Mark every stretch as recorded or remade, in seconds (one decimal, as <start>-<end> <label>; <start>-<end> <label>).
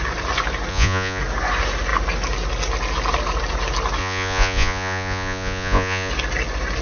0.0-0.7 recorded; 0.7-1.2 remade; 1.2-4.0 recorded; 4.0-6.1 remade; 6.1-6.8 recorded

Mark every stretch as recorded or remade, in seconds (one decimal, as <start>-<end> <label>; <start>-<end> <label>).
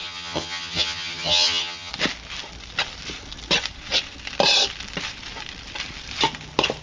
0.0-1.9 remade; 1.9-6.8 recorded